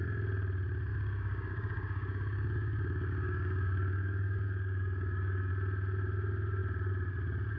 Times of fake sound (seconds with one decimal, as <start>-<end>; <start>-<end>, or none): 0.9-5.5